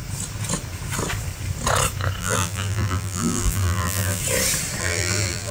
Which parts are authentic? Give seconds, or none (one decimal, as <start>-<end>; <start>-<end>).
0.0-2.2; 4.2-4.8